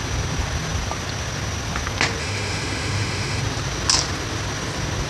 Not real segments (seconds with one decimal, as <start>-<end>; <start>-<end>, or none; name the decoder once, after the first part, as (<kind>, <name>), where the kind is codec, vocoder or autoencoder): 2.2-3.4 (autoencoder, DAC-VAE)